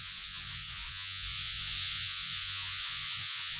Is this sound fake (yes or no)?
yes